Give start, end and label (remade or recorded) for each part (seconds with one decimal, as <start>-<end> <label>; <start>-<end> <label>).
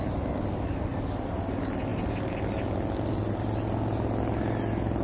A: 0.0-5.0 recorded